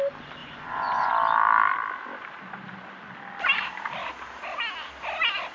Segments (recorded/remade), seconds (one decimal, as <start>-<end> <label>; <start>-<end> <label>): 0.0-0.4 recorded; 0.4-1.1 remade; 1.1-5.5 recorded